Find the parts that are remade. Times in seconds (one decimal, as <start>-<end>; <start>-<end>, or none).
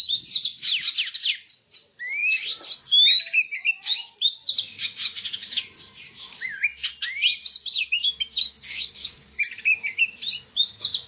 4.7-5.6; 7.7-9.4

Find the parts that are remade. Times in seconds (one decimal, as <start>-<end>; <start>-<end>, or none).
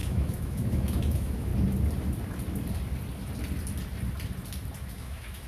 0.0-1.5; 4.8-5.5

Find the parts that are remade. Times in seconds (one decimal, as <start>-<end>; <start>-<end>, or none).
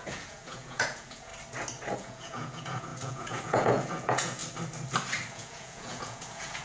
0.0-1.3; 1.9-4.4; 5.3-6.6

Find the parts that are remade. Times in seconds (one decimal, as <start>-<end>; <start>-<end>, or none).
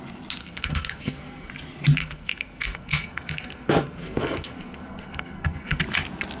0.4-1.5; 2.0-5.8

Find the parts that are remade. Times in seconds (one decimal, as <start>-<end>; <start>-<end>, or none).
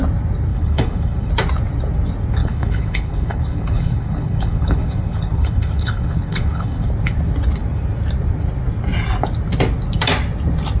0.5-1.3; 2.4-6.9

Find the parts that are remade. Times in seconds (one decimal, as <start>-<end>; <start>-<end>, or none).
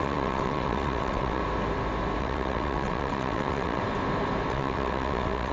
0.0-1.4; 2.2-3.8; 4.5-5.5